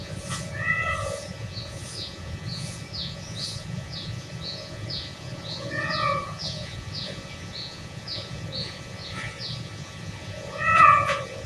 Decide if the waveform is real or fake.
fake